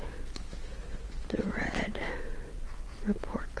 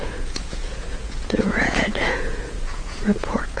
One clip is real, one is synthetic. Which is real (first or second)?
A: first